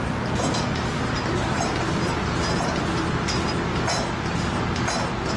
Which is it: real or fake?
real